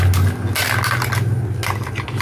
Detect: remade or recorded recorded